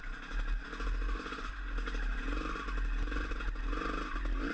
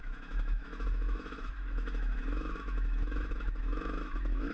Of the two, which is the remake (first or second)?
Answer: second